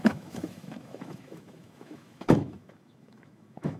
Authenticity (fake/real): fake